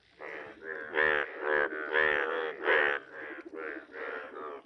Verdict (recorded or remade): recorded